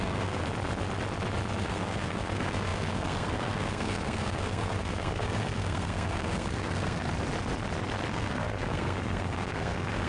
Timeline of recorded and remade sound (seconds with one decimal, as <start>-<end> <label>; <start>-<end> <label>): 0.0-0.4 remade; 0.4-1.6 recorded; 1.6-7.1 remade; 7.1-8.1 recorded; 8.1-10.1 remade